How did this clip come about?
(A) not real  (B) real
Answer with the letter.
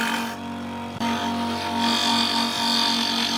B